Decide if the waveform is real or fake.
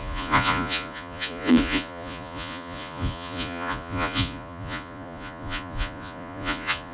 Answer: fake